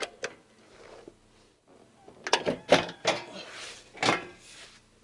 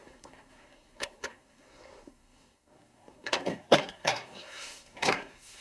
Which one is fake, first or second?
second